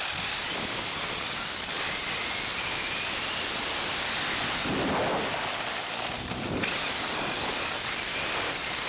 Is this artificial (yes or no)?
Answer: no